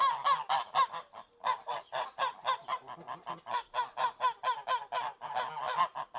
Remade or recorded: recorded